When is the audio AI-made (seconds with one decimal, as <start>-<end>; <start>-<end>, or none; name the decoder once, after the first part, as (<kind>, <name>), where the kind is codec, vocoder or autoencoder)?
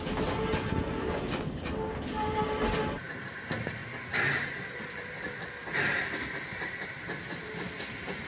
none